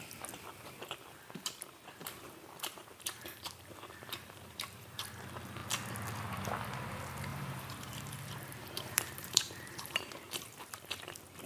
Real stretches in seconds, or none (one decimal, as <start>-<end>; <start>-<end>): 0.0-2.0; 5.0-7.3; 10.9-11.5